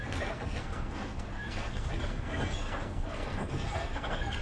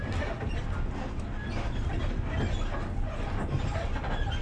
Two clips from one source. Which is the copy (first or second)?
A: first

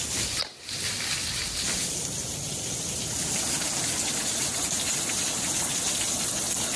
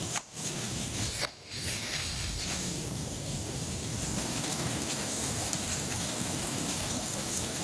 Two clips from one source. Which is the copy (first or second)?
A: second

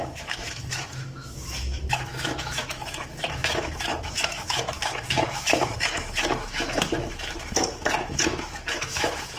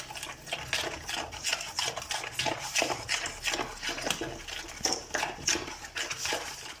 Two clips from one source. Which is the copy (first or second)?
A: first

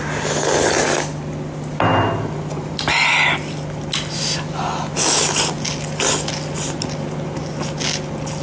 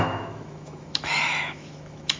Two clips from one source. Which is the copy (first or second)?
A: second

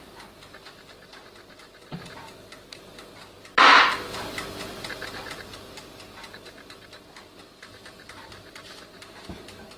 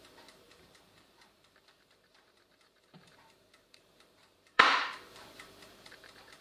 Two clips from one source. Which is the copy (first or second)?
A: second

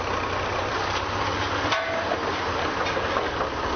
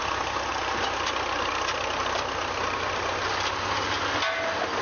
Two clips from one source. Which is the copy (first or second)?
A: first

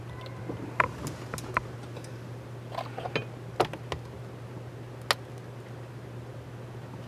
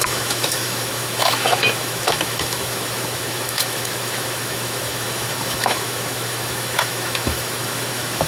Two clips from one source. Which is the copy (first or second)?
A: second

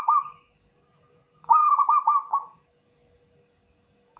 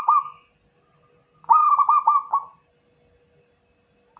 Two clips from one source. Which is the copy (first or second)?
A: first